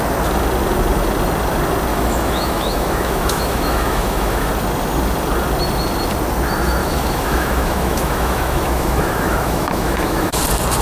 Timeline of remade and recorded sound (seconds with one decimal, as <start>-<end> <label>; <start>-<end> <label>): 0.0-1.9 recorded; 1.9-4.5 remade; 4.5-6.8 recorded; 6.8-10.4 remade; 10.4-10.8 recorded